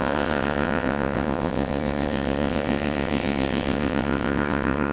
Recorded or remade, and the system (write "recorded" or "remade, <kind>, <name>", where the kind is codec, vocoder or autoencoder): remade, vocoder, WaveNeXt